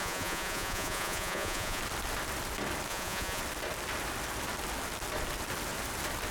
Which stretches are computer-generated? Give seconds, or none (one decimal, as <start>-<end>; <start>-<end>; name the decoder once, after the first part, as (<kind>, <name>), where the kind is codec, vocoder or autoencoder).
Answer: 0.0-1.8 (vocoder, Vocos); 2.9-3.4

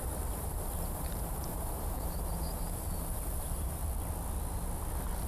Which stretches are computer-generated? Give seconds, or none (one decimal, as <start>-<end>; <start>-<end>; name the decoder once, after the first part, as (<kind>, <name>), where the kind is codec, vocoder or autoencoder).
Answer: 0.0-3.8 (vocoder, BigVGAN v2)

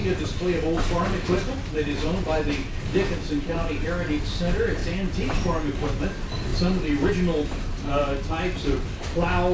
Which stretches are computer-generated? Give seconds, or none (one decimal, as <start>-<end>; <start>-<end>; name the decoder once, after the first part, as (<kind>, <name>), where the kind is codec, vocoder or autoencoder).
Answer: none

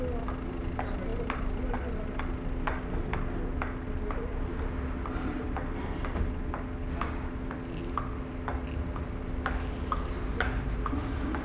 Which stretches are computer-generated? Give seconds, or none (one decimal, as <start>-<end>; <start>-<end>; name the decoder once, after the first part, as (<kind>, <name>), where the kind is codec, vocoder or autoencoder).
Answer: none

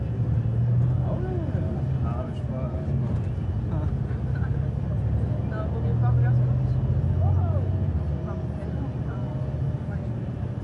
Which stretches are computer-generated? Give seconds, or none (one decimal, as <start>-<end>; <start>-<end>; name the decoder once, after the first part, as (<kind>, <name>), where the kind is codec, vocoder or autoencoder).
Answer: none

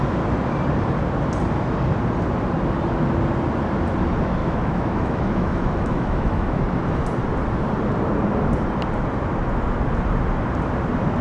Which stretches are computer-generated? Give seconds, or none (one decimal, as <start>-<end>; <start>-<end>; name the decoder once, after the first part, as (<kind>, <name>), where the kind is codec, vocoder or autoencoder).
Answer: 4.4-6.6 (autoencoder, DAC-VAE)